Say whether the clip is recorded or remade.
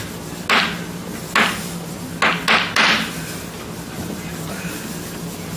recorded